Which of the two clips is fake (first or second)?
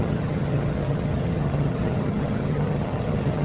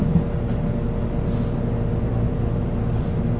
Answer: first